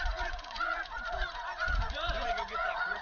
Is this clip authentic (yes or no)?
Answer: no